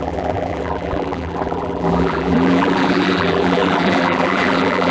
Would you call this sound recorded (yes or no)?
no